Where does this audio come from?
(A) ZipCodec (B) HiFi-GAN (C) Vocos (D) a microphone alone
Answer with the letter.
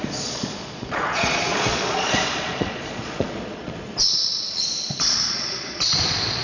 C